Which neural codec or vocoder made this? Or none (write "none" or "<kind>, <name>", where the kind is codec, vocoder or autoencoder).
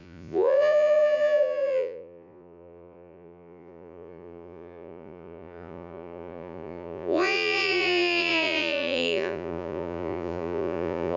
vocoder, Vocos